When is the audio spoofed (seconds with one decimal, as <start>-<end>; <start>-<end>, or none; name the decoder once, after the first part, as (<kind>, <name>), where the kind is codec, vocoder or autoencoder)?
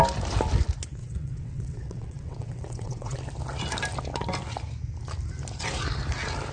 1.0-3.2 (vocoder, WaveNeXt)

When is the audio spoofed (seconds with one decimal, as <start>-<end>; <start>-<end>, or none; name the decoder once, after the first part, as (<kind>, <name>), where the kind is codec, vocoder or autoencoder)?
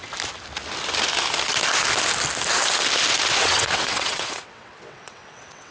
3.4-5.7 (vocoder, WaveNeXt)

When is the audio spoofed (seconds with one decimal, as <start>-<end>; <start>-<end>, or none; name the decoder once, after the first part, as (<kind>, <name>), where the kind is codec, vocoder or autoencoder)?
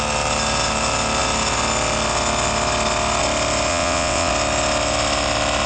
3.7-4.3 (vocoder, WaveNeXt)